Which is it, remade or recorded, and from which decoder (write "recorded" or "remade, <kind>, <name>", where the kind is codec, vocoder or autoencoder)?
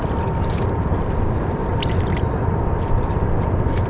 recorded